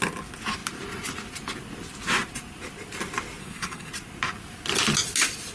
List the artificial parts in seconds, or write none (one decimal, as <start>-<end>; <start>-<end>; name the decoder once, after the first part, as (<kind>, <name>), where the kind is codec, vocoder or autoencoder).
3.4-3.9 (codec, SNAC)